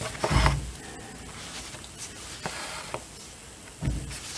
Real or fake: real